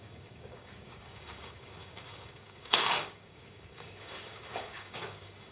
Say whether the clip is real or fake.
fake